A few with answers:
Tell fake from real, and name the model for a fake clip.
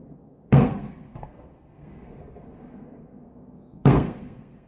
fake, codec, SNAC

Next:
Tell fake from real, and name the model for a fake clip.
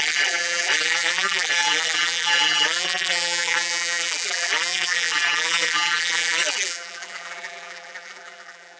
fake, vocoder, BigVGAN v2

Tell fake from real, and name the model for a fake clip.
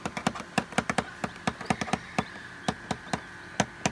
real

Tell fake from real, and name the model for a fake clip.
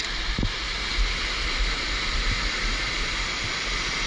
real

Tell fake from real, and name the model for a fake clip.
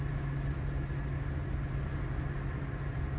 real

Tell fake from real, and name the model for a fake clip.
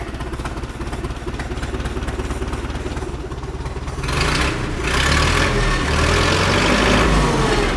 real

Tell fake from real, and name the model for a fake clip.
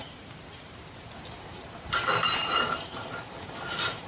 fake, vocoder, BigVGAN v2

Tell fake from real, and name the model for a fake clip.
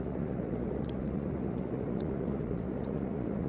fake, vocoder, Vocos